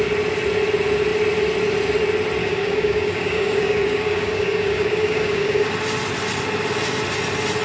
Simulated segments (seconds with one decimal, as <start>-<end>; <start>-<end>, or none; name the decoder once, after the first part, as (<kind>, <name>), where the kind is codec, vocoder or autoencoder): 2.4-5.7 (codec, DAC)